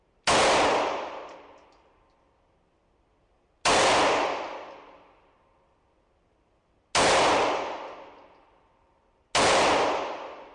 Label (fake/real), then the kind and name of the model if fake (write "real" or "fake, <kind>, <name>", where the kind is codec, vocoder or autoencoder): real